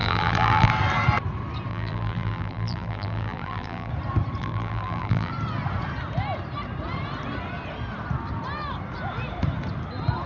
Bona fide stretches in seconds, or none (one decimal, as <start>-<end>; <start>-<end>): 0.7-1.7; 3.9-4.4; 5.3-10.3